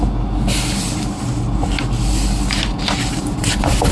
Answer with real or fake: real